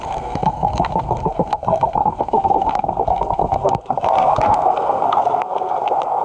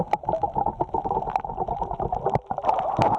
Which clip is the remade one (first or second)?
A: first